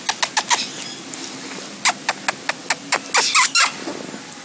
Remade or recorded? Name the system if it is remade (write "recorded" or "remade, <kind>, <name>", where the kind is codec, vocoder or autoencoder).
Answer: recorded